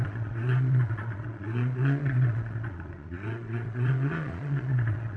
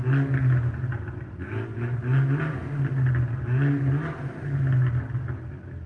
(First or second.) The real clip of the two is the second